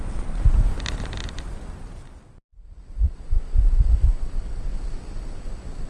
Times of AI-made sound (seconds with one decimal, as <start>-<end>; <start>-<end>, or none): 4.1-4.7